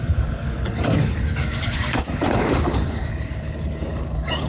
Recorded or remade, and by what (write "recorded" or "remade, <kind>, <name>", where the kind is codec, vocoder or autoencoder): remade, codec, DAC